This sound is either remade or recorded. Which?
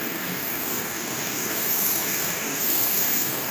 remade